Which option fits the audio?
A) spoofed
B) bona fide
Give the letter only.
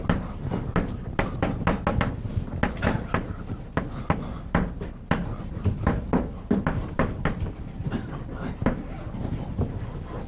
B